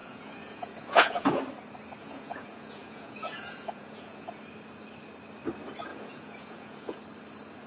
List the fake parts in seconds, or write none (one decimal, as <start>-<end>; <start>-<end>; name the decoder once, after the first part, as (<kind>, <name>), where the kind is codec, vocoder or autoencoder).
0.0-1.4 (vocoder, Vocos); 2.0-4.4; 5.9-7.0